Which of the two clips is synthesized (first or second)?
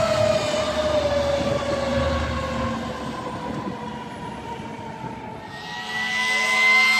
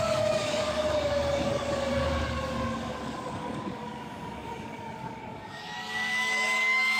second